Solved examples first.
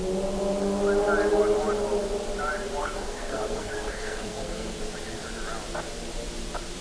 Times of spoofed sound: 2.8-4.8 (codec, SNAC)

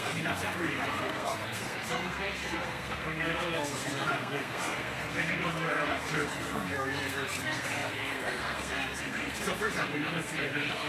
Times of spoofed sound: 0.0-10.9 (codec, SNAC)

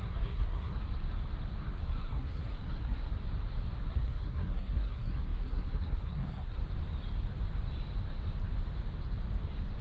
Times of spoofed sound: 0.0-0.8 (codec, SNAC); 1.8-3.1; 3.9-6.6

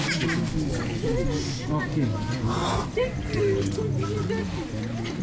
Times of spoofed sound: none

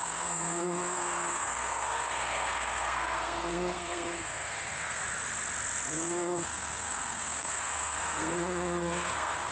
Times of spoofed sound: 0.0-5.0 (codec, SNAC); 5.9-9.5

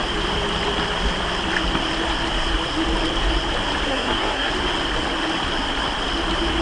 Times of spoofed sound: 3.9-4.5 (codec, SNAC)